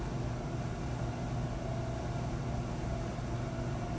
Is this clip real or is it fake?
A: real